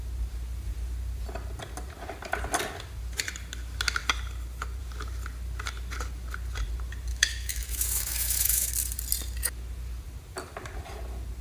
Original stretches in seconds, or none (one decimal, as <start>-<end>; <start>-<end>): 0.0-7.1; 8.7-11.4